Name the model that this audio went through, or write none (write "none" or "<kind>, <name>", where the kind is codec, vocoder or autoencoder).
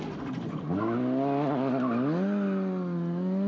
none